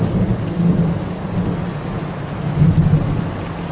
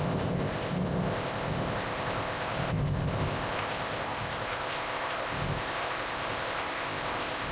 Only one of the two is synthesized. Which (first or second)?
second